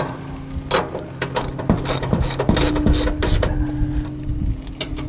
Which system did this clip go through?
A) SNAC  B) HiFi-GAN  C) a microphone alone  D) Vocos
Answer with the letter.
C